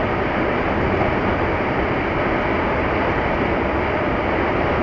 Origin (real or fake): real